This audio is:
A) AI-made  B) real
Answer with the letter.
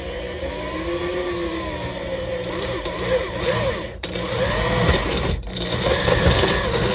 A